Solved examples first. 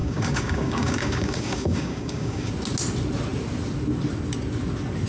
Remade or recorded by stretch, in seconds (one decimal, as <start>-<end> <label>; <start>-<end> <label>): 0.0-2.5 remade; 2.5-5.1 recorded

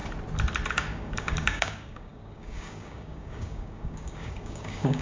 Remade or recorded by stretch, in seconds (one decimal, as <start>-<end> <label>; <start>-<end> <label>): 0.0-0.7 recorded; 0.7-5.0 remade

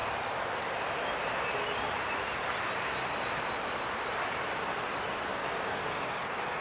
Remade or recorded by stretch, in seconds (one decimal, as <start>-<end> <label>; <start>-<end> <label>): 0.0-5.4 recorded; 5.4-6.6 remade

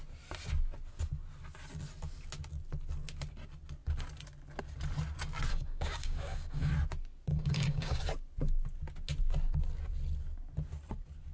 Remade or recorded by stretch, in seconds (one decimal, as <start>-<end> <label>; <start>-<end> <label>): 0.0-5.5 recorded; 5.5-6.7 remade; 6.7-7.3 recorded; 7.3-8.0 remade; 8.0-11.3 recorded